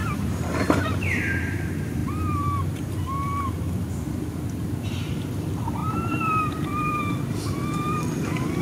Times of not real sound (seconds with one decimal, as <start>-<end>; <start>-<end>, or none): 0.0-1.6; 5.8-6.6